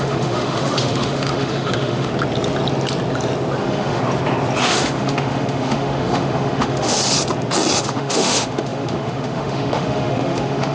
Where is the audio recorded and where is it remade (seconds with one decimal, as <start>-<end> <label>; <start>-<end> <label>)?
0.0-2.1 remade; 2.1-3.6 recorded; 3.6-4.0 remade; 4.0-4.6 recorded; 4.6-7.0 remade; 7.0-7.8 recorded; 7.8-10.7 remade